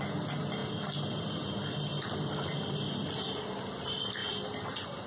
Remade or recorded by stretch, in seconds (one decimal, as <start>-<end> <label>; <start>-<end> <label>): 0.0-5.1 recorded